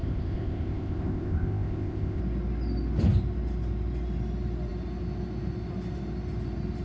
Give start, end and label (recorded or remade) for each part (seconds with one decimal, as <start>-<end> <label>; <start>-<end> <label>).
0.0-2.2 remade; 2.2-6.8 recorded